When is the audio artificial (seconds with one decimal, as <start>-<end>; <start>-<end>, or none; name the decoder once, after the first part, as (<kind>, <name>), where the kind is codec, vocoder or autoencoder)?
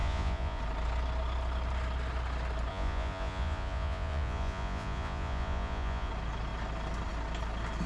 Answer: 0.0-0.6 (vocoder, Vocos); 2.7-6.1